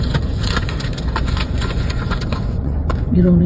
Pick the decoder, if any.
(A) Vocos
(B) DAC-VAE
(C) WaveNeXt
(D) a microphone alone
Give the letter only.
A